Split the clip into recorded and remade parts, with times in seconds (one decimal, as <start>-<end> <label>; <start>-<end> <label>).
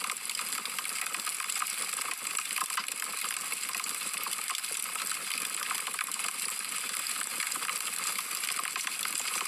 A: 0.0-9.5 recorded